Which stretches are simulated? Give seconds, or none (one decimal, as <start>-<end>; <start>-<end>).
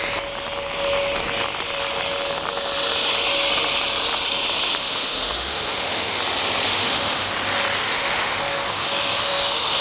4.8-6.2; 6.7-7.3; 7.8-9.8